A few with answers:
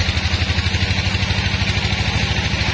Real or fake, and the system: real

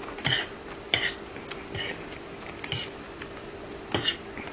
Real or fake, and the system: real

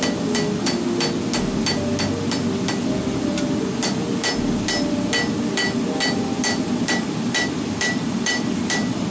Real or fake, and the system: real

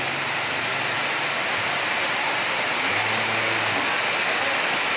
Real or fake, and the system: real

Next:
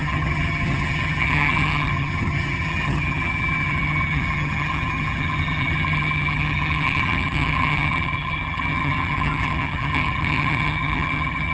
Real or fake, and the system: fake, vocoder, HiFi-GAN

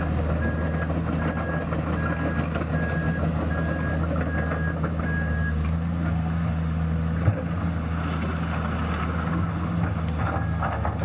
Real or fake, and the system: real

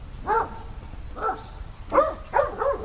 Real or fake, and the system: real